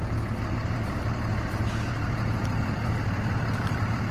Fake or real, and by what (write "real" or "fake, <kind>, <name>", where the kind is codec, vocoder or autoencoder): fake, vocoder, BigVGAN v2